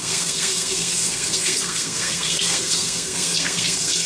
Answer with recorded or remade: remade